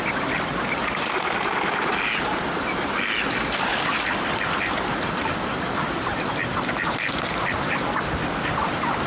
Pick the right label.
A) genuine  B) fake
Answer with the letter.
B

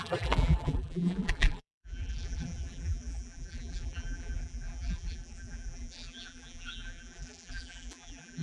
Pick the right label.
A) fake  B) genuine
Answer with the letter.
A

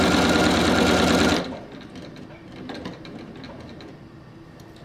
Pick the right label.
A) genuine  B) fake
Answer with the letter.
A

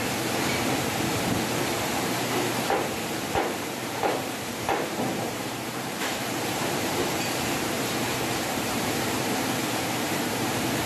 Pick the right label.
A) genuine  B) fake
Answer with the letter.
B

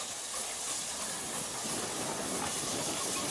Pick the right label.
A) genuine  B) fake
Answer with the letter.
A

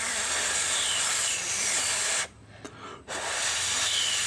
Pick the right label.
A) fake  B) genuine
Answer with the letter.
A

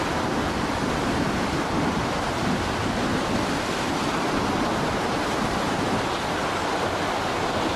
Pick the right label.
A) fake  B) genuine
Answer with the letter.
B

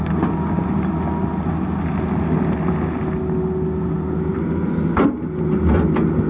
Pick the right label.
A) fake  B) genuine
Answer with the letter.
B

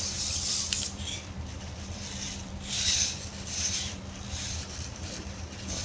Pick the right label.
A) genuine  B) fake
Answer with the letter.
B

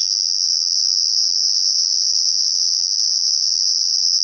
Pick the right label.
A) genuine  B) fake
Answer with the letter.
B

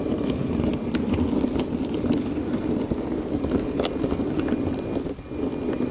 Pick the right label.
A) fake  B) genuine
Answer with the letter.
B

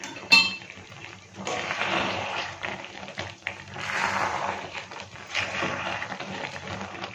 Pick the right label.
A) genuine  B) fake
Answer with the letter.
B